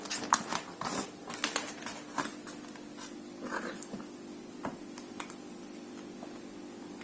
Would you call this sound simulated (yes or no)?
no